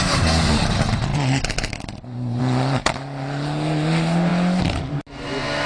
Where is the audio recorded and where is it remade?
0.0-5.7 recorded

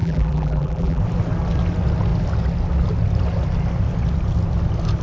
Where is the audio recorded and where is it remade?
0.0-1.0 remade; 1.0-5.0 recorded

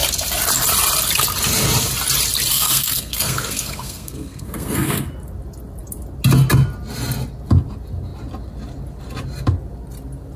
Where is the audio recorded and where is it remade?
0.0-2.5 recorded; 2.5-5.1 remade; 5.1-10.4 recorded